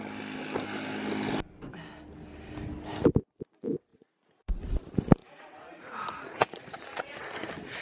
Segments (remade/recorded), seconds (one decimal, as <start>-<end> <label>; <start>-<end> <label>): 0.0-3.9 recorded; 3.9-4.7 remade; 4.7-5.2 recorded; 5.2-6.6 remade; 6.6-7.8 recorded